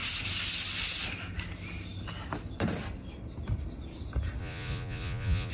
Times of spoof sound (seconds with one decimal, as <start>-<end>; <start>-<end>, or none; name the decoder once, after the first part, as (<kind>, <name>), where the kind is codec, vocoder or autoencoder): 4.4-5.5 (vocoder, Vocos)